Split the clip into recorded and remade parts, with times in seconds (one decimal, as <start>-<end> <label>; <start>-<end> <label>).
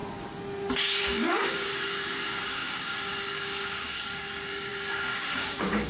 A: 0.0-1.0 recorded; 1.0-5.9 remade